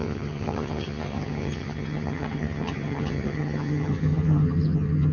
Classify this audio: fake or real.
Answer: fake